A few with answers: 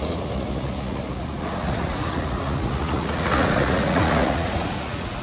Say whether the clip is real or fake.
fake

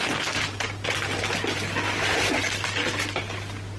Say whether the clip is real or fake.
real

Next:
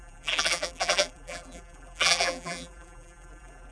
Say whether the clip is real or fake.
fake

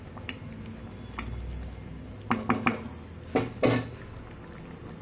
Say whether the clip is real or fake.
real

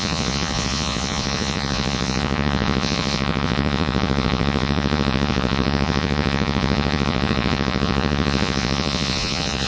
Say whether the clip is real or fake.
fake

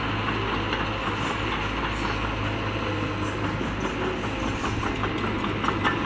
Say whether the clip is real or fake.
real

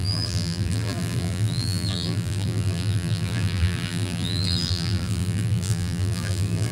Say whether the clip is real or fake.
fake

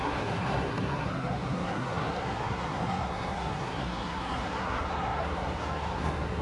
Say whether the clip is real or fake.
fake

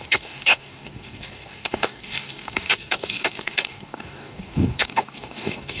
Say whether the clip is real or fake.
fake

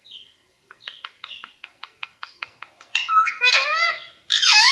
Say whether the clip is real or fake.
fake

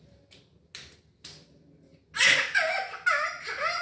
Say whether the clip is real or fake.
real